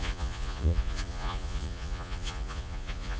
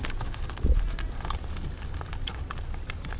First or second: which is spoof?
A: first